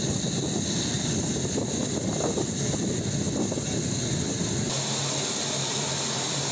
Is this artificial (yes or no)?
no